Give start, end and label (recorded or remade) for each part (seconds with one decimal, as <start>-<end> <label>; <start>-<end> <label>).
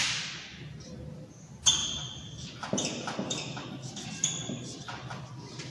0.0-5.7 recorded